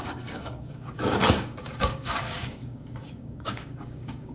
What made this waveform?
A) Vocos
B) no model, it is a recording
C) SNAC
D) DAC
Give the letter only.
D